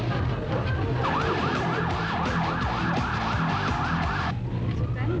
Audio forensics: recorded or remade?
recorded